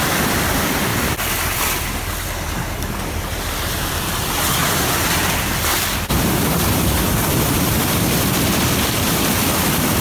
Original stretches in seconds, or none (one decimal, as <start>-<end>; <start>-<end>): 0.9-3.7

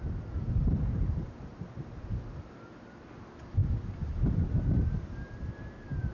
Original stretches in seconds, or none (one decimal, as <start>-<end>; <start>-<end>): 0.0-6.1

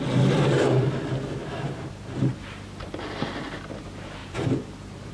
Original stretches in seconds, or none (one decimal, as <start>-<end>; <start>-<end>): 0.0-1.4; 2.3-4.2

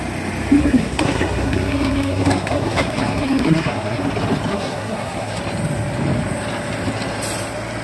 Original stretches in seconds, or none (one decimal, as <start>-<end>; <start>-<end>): 0.0-0.6; 4.0-4.5; 5.4-7.8

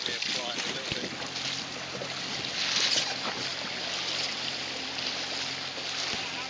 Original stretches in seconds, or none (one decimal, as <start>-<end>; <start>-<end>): 0.0-6.5

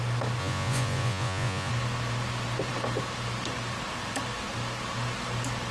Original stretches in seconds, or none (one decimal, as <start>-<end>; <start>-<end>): 0.0-0.4; 1.7-5.7

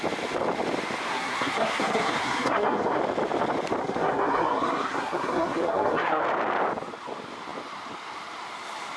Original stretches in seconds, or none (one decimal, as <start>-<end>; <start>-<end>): 0.0-1.1; 3.0-3.8; 6.2-9.0